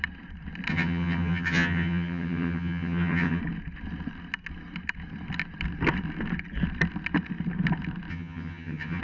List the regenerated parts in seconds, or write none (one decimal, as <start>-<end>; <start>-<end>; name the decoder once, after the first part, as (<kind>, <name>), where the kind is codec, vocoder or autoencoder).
0.7-3.4 (vocoder, HiFi-GAN); 8.1-9.0